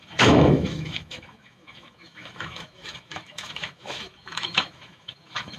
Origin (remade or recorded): remade